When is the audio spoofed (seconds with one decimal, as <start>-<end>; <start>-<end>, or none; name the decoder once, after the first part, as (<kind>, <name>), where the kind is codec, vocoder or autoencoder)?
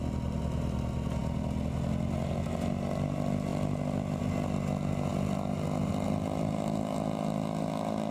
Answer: none